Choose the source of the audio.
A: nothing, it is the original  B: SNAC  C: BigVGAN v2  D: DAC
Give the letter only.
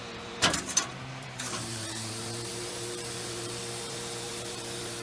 C